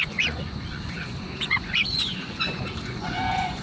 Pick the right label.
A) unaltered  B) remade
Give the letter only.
B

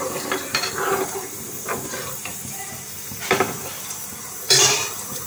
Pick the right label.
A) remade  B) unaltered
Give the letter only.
A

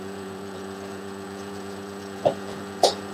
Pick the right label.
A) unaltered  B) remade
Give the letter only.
B